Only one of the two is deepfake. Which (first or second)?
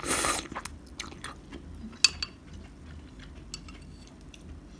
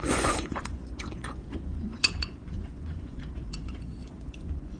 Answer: second